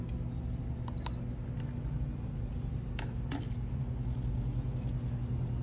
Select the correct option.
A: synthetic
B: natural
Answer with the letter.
B